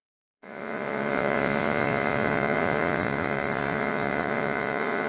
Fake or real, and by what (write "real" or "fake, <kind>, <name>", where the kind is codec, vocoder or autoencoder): fake, vocoder, Vocos